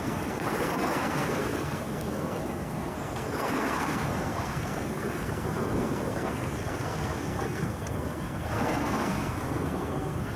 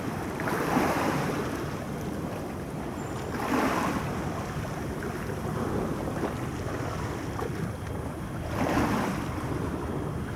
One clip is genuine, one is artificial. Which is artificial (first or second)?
first